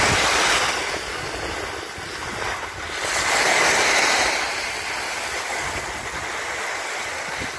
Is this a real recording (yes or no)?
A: yes